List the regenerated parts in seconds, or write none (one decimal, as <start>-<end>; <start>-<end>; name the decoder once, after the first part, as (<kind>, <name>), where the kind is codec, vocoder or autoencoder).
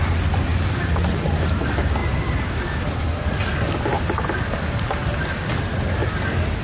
none